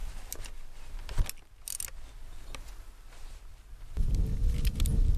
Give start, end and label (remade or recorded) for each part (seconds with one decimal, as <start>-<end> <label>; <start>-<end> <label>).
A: 0.0-5.2 recorded

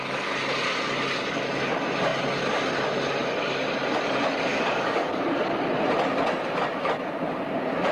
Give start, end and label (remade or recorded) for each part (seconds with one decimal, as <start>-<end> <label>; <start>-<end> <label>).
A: 0.0-4.5 recorded; 4.5-5.2 remade; 5.2-7.9 recorded

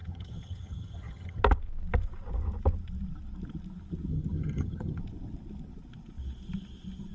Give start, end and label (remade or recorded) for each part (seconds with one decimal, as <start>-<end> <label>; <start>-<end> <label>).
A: 0.0-1.4 remade; 1.4-4.1 recorded; 4.1-5.0 remade; 5.0-7.1 recorded

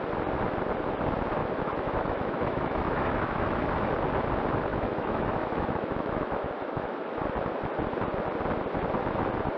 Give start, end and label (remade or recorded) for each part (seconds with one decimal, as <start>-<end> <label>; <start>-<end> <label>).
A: 0.0-1.4 recorded; 1.4-3.6 remade; 3.6-4.7 recorded; 4.7-7.1 remade; 7.1-9.6 recorded

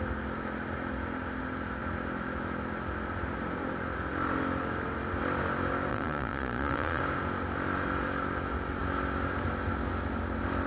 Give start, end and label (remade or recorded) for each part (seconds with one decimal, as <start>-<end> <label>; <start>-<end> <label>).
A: 0.0-5.9 recorded; 5.9-7.0 remade; 7.0-10.7 recorded

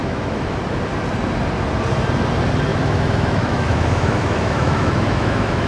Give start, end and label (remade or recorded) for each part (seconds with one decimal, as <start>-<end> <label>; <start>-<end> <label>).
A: 0.0-0.6 remade; 0.6-2.7 recorded; 2.7-5.7 remade

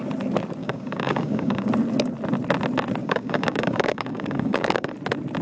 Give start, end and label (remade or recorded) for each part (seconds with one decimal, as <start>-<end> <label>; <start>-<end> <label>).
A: 0.0-0.6 recorded; 0.6-1.7 remade; 1.7-3.0 recorded; 3.0-4.9 remade; 4.9-5.4 recorded

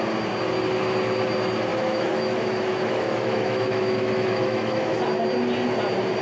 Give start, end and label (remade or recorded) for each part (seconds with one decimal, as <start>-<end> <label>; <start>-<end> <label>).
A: 0.0-1.7 recorded; 1.7-4.9 remade; 4.9-6.2 recorded